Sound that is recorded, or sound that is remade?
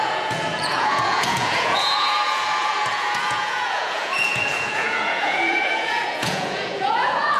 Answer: remade